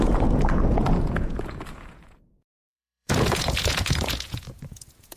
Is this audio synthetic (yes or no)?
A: yes